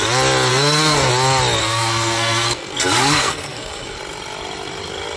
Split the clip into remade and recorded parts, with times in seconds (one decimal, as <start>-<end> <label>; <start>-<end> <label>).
0.0-0.5 recorded; 0.5-1.1 remade; 1.1-1.6 recorded; 1.6-4.0 remade; 4.0-5.2 recorded